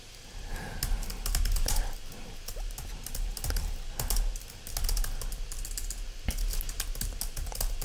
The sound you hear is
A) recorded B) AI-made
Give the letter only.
A